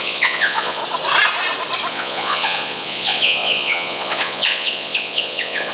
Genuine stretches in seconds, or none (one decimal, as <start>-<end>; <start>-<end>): 0.8-1.9